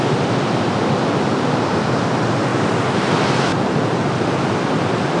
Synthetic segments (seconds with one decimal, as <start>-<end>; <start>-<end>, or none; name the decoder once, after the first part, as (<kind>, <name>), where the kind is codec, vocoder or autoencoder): none